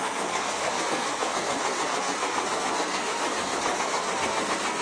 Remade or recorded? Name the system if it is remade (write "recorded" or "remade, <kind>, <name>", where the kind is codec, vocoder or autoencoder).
remade, codec, SNAC